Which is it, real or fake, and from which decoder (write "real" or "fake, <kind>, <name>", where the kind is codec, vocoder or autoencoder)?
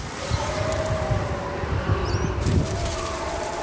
real